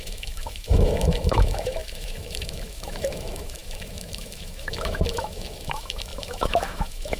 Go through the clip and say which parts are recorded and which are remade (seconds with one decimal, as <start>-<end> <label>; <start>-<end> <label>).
0.0-7.2 remade